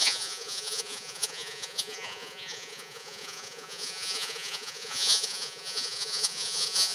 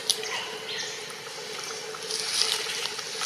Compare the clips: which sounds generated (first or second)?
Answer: first